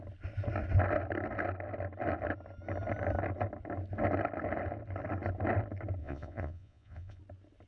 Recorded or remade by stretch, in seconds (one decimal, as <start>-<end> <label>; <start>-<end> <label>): 0.0-6.0 recorded; 6.0-7.2 remade; 7.2-7.7 recorded